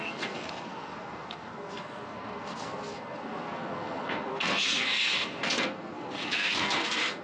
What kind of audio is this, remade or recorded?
remade